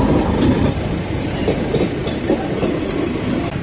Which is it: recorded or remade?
recorded